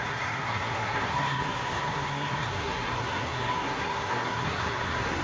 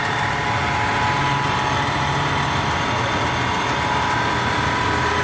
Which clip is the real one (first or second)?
second